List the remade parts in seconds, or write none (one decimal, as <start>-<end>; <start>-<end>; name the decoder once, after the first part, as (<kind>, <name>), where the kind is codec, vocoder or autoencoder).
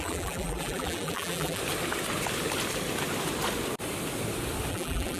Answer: 0.0-1.6 (vocoder, BigVGAN v2); 4.7-5.2